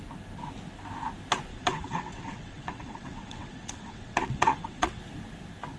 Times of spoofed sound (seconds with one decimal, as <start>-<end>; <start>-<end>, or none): 1.5-5.0